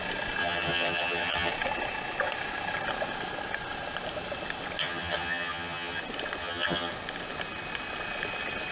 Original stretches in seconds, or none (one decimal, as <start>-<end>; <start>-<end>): 0.0-0.4; 1.5-4.8; 6.0-6.4; 6.9-8.7